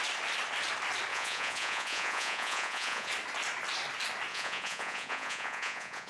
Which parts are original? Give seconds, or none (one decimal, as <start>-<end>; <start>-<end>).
0.0-1.1; 3.1-4.3